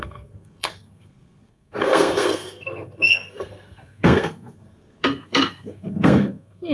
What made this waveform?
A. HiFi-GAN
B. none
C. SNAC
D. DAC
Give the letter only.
C